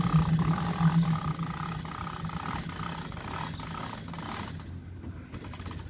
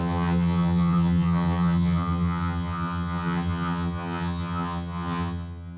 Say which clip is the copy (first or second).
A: second